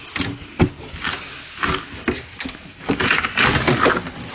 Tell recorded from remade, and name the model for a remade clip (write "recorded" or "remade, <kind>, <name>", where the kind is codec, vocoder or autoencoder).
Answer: recorded